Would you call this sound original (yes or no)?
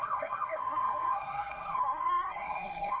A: no